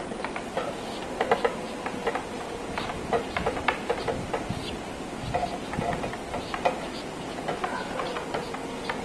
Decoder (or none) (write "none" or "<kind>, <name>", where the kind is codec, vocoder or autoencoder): none